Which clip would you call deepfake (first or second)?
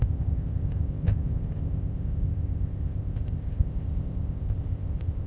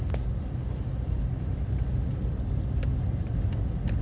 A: first